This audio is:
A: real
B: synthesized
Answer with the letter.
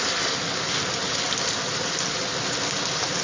A